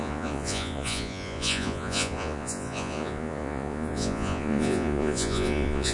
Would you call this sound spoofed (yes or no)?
yes